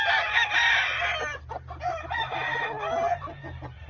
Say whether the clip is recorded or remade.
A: recorded